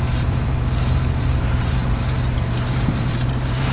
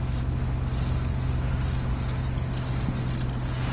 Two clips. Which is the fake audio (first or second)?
first